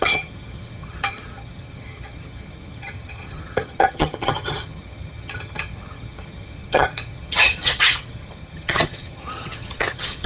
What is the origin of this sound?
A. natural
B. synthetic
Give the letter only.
B